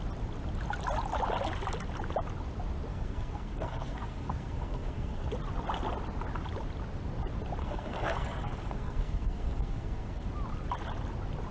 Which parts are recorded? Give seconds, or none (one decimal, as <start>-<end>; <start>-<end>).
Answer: 0.0-2.9; 5.3-7.6; 10.3-11.5